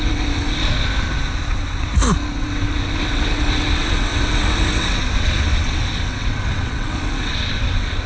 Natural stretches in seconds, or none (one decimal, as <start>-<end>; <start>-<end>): 0.6-1.5; 1.9-2.4